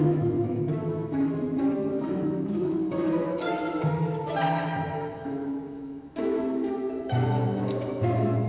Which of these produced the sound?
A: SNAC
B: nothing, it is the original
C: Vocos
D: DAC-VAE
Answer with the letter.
D